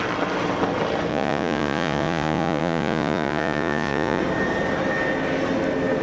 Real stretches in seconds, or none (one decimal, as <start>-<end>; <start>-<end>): 0.0-1.1; 4.2-6.0